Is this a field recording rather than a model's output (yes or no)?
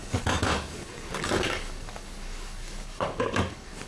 no